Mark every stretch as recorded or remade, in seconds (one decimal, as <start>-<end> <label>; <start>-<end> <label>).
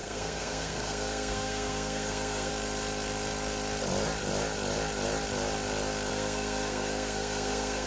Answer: 0.0-2.5 remade; 2.5-6.1 recorded; 6.1-7.9 remade